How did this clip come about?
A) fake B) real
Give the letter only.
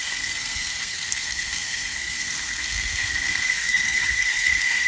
A